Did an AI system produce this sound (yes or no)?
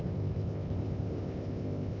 yes